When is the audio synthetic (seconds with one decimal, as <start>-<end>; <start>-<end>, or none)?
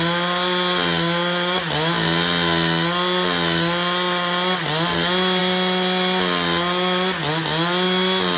none